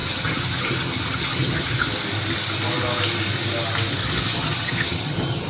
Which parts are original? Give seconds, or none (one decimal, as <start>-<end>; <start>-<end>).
1.9-4.0